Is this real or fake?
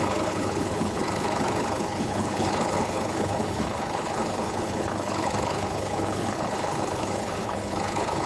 fake